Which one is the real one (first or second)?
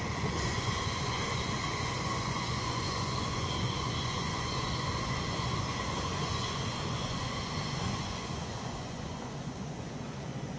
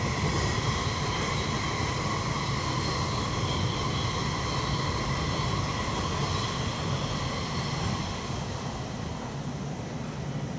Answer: second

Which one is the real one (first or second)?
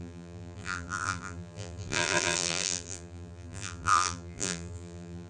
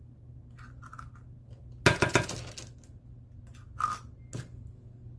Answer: second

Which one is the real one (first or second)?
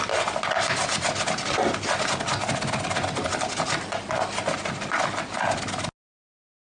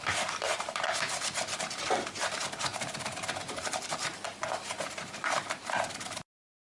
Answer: first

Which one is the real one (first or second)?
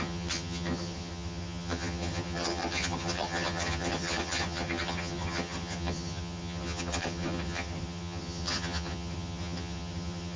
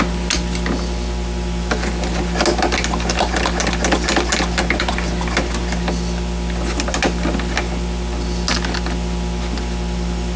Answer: second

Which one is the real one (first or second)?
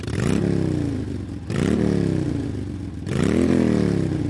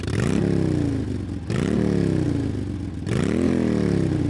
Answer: second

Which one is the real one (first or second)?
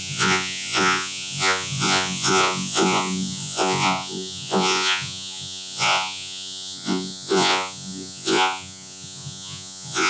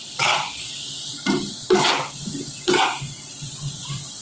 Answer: second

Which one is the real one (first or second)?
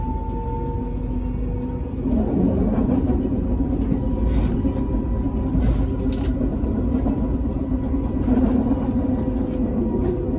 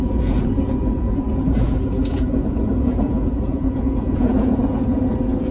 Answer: first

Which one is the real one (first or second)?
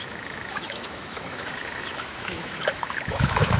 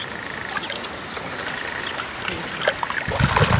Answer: second